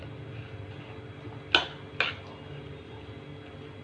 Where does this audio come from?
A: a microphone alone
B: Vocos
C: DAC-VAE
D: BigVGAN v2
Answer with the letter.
A